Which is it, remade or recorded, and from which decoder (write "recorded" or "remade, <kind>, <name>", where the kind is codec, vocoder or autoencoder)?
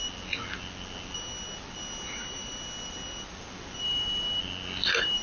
recorded